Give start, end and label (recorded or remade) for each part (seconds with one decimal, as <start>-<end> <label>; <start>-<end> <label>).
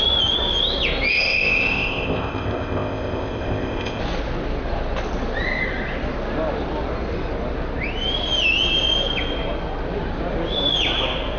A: 0.0-1.1 recorded; 1.1-4.0 remade; 4.0-11.4 recorded